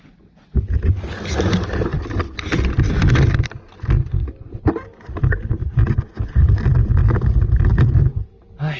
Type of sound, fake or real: real